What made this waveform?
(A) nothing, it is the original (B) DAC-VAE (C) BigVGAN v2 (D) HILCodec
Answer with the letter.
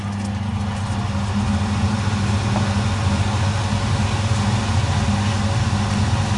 A